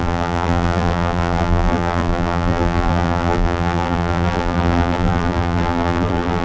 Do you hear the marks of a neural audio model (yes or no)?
yes